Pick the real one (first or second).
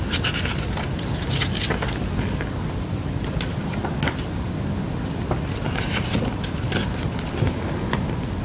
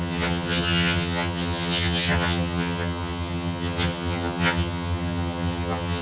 first